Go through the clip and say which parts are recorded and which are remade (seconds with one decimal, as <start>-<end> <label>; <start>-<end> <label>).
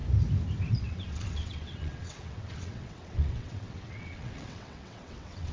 0.0-0.7 recorded; 0.7-5.5 remade